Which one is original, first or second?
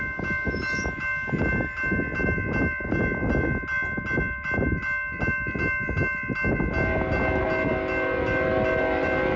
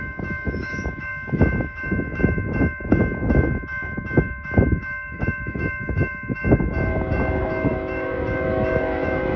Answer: first